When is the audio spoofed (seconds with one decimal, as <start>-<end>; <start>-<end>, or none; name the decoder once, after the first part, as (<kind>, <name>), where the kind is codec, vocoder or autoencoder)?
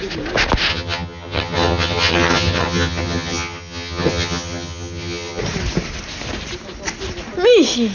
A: 0.7-5.4 (vocoder, HiFi-GAN)